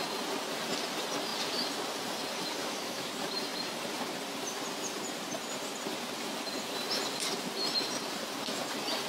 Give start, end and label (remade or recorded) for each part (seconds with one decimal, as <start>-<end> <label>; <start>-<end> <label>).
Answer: 0.0-2.6 recorded; 2.6-3.1 remade; 3.1-9.1 recorded